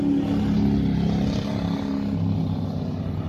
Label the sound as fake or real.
real